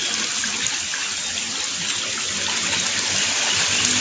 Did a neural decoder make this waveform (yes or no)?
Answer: no